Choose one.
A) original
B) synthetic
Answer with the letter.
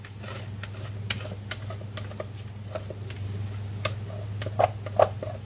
A